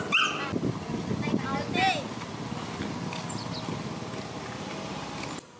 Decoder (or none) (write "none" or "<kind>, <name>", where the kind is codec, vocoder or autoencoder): none